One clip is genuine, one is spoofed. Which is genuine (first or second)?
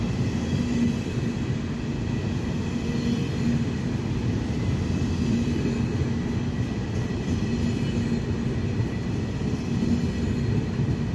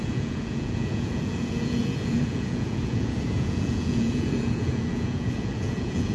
first